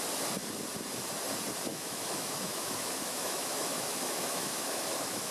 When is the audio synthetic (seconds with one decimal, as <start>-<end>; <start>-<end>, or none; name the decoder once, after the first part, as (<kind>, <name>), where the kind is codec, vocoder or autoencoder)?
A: 1.7-5.3 (autoencoder, DAC-VAE)